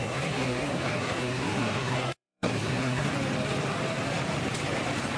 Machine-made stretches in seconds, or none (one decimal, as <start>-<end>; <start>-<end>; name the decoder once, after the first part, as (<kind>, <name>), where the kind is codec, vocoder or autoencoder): 0.0-3.1 (codec, SNAC)